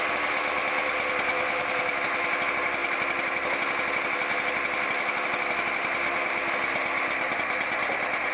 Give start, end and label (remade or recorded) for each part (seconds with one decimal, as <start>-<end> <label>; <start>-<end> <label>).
0.0-1.3 recorded; 1.3-2.3 remade; 2.3-8.3 recorded